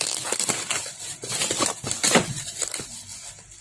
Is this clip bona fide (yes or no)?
yes